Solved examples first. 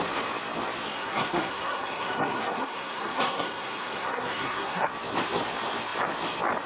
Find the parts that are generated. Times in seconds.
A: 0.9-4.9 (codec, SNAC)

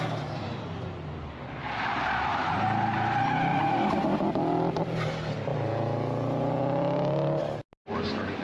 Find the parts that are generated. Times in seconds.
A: 3.5-5.1 (vocoder, BigVGAN v2)

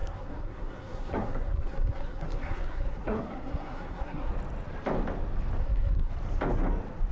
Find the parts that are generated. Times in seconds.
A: 0.0-4.3 (codec, SNAC); 5.6-6.1

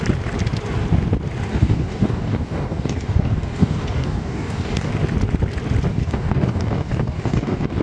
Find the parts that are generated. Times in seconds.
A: 1.5-4.9 (codec, DAC); 5.9-7.8

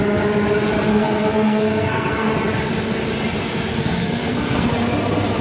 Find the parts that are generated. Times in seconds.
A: 0.9-2.3 (codec, SNAC); 3.7-4.7

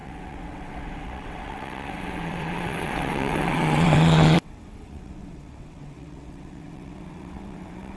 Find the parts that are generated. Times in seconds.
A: 0.0-8.0 (vocoder, WaveNeXt)